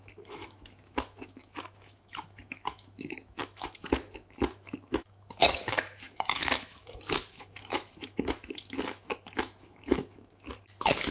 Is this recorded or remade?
remade